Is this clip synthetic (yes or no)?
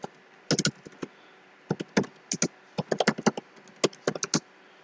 no